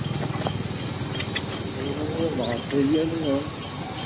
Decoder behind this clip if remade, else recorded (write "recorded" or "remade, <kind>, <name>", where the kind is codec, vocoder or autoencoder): recorded